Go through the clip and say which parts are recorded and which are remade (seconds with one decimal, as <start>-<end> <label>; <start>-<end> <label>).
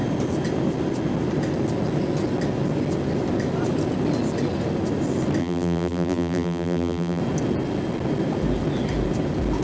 0.0-5.4 recorded; 5.4-7.2 remade; 7.2-9.6 recorded